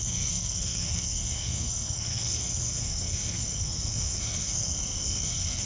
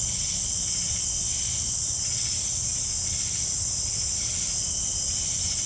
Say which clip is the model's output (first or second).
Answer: first